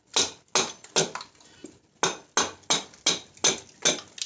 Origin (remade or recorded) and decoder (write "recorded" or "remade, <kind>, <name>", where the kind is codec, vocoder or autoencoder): recorded